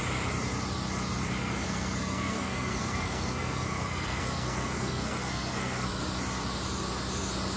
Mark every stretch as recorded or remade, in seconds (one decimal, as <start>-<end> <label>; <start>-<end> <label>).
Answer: 0.0-1.4 recorded; 1.4-6.0 remade; 6.0-7.6 recorded